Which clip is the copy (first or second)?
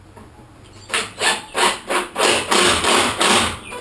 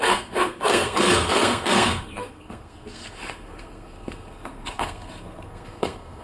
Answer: second